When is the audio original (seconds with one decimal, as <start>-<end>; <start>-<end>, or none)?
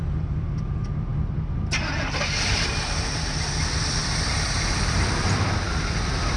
0.0-1.1; 3.2-4.0